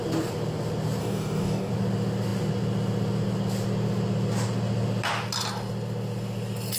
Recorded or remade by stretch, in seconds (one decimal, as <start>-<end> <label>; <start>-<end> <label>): 0.0-1.0 recorded; 1.0-1.7 remade; 1.7-6.8 recorded